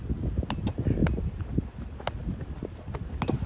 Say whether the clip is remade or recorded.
recorded